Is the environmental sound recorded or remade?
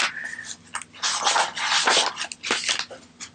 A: recorded